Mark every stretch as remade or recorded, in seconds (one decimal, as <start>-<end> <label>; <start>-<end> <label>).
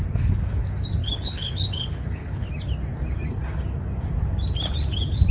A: 0.0-1.0 recorded; 1.0-2.5 remade; 2.5-5.3 recorded